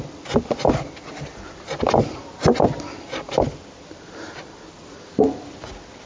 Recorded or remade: recorded